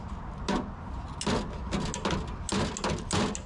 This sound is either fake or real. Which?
real